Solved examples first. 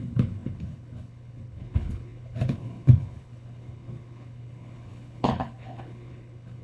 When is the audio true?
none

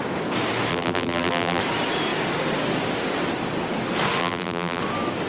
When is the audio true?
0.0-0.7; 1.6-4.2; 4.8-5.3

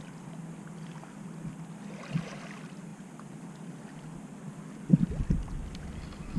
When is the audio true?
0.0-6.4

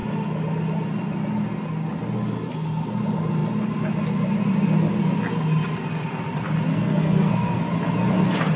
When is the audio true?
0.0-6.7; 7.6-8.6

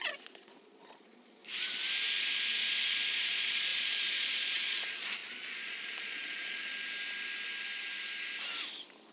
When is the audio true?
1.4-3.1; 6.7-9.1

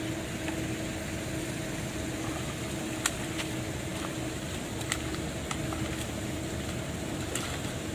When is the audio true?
0.0-7.9